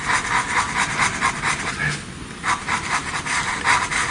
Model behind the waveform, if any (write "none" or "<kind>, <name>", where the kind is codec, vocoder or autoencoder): none